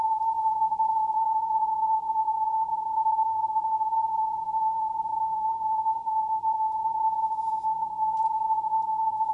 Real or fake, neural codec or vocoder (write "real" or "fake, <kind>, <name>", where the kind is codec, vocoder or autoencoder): fake, vocoder, Vocos